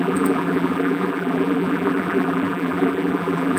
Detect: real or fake fake